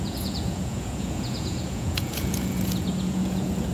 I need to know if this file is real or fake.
fake